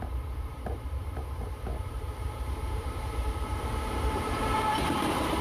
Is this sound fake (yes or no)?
yes